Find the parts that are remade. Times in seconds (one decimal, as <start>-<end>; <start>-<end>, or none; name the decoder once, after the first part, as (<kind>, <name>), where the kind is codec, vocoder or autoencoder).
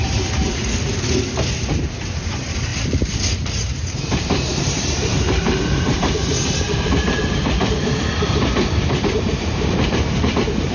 0.0-0.6 (vocoder, BigVGAN v2); 1.7-2.7; 3.5-10.7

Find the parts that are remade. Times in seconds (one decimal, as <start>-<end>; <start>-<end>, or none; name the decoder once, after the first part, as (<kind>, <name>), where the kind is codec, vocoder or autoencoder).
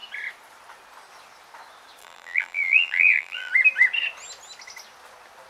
2.0-3.5 (vocoder, BigVGAN v2)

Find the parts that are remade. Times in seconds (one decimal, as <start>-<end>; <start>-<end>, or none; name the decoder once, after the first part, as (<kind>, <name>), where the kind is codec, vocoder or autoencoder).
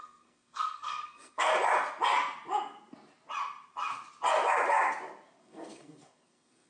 0.0-1.5 (codec, SNAC); 5.4-6.7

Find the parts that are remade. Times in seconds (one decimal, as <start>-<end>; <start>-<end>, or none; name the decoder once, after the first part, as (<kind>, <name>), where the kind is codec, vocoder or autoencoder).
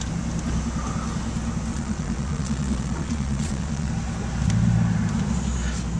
1.7-3.9 (vocoder, Vocos)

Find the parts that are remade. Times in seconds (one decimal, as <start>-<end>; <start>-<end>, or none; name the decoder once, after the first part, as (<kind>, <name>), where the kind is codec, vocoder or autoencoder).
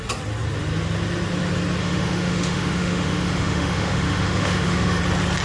1.8-5.0 (autoencoder, DAC-VAE)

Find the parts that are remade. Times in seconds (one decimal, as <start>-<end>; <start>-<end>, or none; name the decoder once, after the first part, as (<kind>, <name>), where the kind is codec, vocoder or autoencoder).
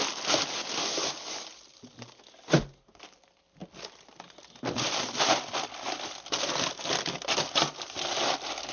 none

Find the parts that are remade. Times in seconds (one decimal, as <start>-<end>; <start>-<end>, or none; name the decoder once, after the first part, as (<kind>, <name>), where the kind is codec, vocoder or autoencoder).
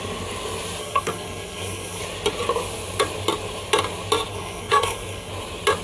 0.8-2.0 (codec, SNAC); 4.3-5.3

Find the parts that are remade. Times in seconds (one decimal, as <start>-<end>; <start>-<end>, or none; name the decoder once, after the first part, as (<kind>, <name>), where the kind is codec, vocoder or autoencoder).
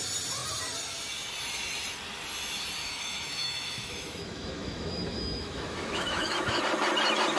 2.8-6.6 (autoencoder, DAC-VAE)